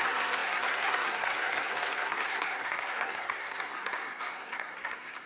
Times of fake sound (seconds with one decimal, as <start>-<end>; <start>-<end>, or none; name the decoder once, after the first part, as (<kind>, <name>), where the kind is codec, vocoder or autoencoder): 0.0-5.3 (codec, SNAC)